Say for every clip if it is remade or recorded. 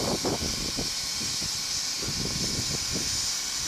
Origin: recorded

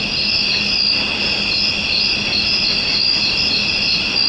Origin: recorded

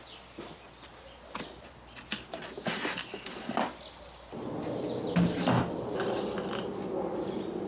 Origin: recorded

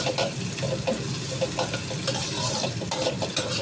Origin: recorded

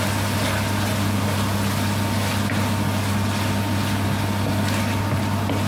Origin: recorded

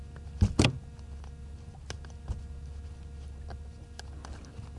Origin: recorded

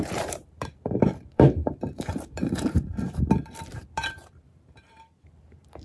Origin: remade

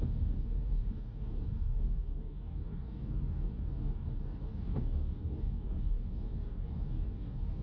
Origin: remade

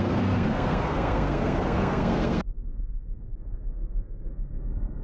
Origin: remade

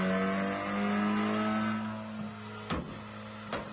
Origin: recorded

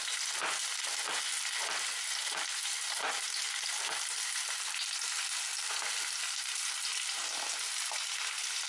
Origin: recorded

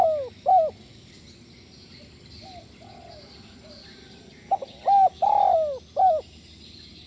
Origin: recorded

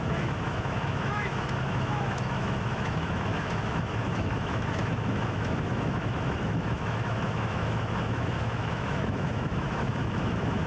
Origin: remade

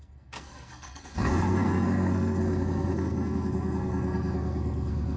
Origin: remade